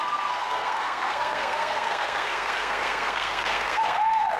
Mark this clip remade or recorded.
remade